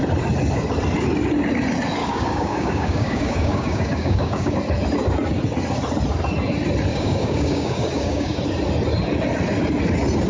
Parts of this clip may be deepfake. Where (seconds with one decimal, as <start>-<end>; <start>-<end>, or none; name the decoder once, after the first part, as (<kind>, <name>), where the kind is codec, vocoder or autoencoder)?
2.0-4.5 (codec, DAC); 6.9-8.4